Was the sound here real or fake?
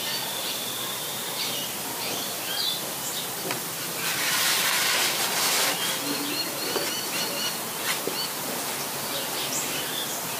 fake